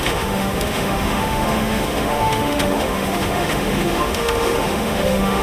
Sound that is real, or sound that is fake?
fake